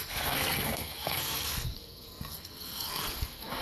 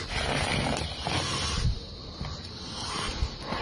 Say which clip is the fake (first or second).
first